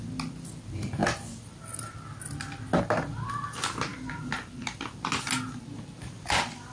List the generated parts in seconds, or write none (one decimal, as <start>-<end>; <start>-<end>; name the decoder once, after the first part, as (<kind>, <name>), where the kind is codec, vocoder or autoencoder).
none